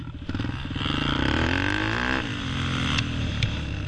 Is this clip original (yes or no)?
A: yes